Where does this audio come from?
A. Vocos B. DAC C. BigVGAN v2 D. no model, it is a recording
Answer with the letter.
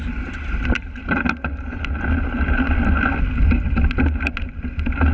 D